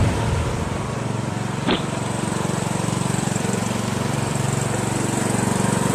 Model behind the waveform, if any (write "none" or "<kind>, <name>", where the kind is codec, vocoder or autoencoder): vocoder, BigVGAN v2